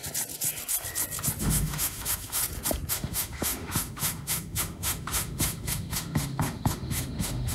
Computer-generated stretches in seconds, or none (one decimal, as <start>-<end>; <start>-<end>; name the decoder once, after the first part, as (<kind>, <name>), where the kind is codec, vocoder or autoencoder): 1.4-2.4 (autoencoder, DAC-VAE); 2.9-7.5